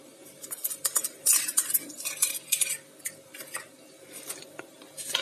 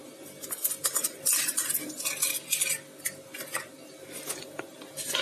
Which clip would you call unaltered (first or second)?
second